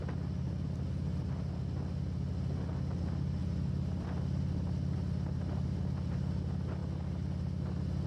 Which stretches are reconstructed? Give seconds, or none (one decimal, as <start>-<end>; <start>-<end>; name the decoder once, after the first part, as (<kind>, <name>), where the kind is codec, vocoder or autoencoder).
none